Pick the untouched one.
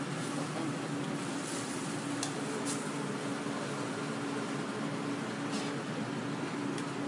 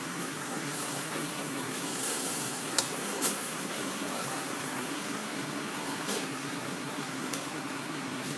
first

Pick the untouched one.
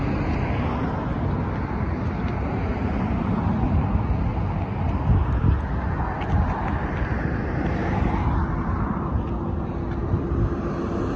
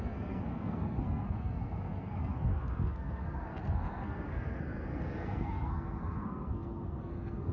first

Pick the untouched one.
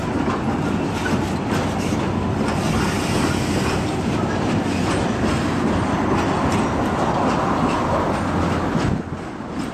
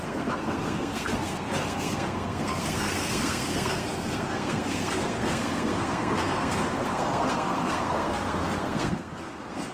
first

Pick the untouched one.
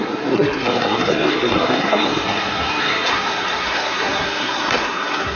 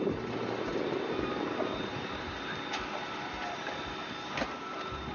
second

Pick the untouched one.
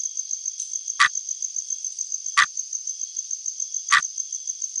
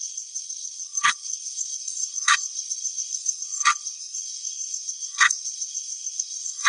first